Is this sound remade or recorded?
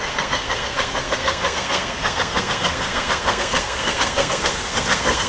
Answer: remade